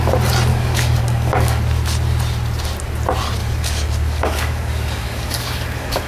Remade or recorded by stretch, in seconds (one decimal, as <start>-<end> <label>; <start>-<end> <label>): 0.0-0.5 recorded; 0.5-1.6 remade; 1.6-3.4 recorded; 3.4-6.1 remade